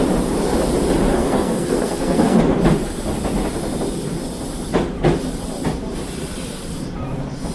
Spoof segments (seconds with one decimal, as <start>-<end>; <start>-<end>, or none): 1.1-2.4